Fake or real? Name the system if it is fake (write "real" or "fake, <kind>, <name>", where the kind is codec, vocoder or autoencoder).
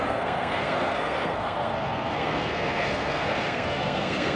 fake, codec, SNAC